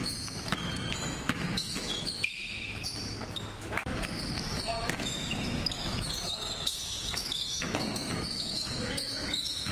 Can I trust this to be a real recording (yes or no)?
no